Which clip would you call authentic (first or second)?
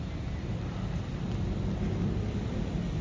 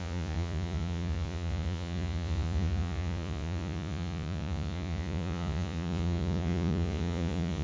first